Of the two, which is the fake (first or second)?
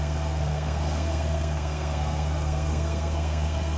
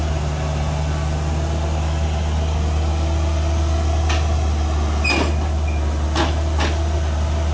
first